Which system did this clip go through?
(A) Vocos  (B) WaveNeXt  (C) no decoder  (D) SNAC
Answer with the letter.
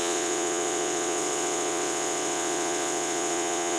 B